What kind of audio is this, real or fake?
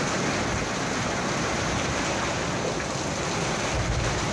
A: real